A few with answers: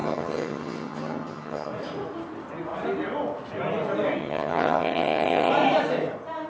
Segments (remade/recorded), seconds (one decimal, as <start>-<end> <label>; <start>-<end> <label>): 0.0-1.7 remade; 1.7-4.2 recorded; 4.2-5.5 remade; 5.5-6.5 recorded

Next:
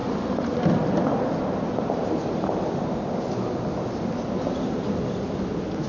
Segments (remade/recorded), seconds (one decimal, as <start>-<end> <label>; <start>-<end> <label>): 0.0-5.9 recorded

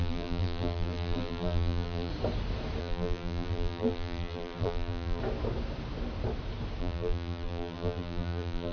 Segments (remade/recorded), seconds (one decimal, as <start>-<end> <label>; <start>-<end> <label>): 0.0-2.1 remade; 2.1-2.8 recorded; 2.8-5.2 remade; 5.2-6.8 recorded; 6.8-8.7 remade